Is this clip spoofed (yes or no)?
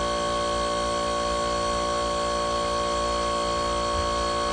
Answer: no